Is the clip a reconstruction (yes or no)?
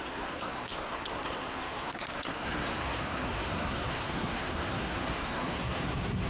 yes